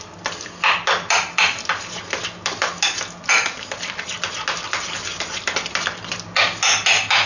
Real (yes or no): yes